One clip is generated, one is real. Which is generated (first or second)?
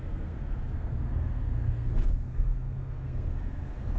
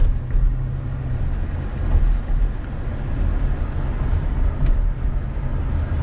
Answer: first